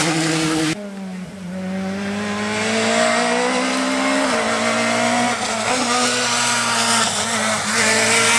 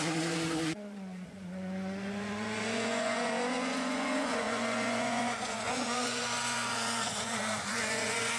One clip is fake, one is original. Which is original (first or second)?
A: first